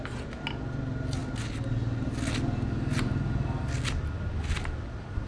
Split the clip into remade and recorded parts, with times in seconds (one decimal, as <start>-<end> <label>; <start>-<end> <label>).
0.0-5.3 recorded